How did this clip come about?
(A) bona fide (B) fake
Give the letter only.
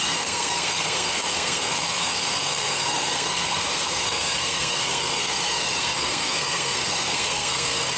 B